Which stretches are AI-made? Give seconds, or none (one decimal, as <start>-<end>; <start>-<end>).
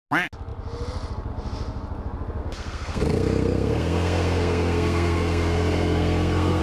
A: 2.4-6.6